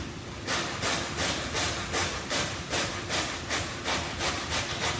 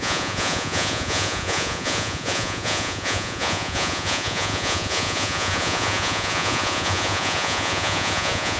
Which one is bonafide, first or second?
first